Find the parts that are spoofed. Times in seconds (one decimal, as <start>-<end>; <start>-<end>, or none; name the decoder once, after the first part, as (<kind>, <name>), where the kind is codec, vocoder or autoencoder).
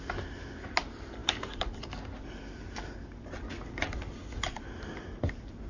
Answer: none